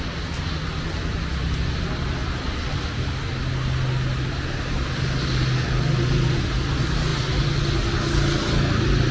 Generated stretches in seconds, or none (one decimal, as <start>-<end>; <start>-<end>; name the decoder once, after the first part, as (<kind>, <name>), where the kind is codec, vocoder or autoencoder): none